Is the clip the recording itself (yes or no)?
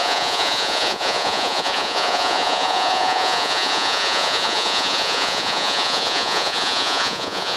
no